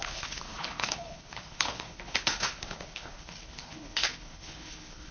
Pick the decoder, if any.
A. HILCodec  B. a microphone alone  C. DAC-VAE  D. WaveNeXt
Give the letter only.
A